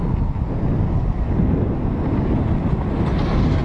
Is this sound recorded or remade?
recorded